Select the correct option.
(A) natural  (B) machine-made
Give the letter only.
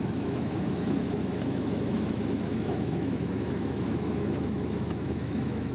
B